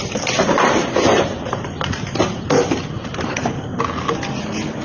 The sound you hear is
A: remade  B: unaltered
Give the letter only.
B